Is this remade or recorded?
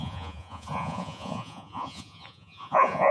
remade